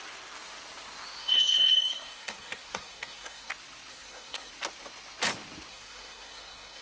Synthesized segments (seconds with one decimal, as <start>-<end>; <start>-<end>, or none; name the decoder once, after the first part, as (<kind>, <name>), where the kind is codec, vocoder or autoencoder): 1.2-3.5 (codec, SNAC); 3.9-4.5; 5.7-6.8